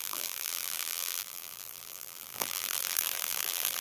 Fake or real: fake